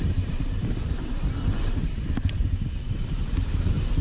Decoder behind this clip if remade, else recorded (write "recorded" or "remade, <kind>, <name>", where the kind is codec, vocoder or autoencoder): recorded